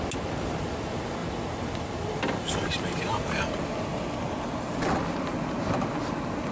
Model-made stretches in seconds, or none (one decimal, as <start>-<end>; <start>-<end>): none